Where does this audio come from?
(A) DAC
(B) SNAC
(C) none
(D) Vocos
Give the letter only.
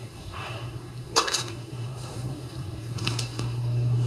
B